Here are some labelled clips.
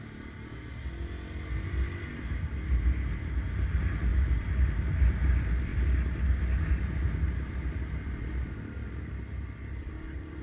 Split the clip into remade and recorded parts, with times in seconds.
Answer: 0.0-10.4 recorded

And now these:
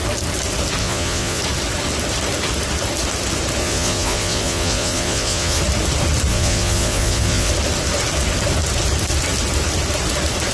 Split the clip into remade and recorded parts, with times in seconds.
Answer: 0.0-0.8 recorded; 0.8-1.4 remade; 1.4-3.6 recorded; 3.6-5.6 remade; 5.6-6.3 recorded; 6.3-7.5 remade; 7.5-10.5 recorded

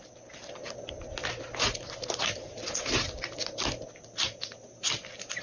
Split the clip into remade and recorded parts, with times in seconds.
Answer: 0.0-5.4 recorded

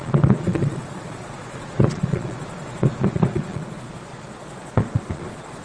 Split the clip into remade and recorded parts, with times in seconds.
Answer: 0.0-5.6 remade